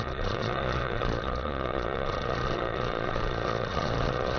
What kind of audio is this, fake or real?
fake